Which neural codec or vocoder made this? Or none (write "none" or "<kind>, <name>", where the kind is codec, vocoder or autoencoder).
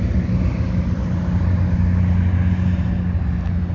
none